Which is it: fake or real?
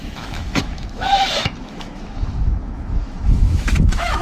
fake